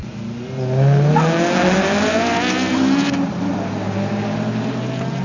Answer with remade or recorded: recorded